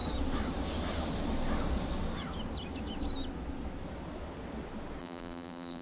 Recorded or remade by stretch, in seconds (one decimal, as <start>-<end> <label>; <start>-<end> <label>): 0.0-5.0 recorded; 5.0-5.8 remade